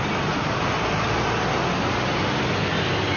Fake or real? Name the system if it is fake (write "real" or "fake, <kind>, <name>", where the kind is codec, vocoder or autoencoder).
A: real